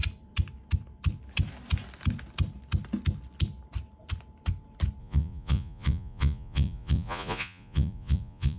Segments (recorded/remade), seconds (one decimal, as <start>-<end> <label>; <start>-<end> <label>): 0.0-5.0 recorded; 5.0-8.6 remade